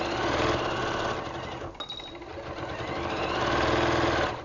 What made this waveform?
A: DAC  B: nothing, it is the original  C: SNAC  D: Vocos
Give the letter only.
B